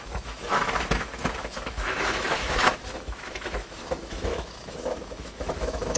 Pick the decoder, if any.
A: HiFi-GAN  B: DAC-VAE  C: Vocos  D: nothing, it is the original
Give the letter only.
B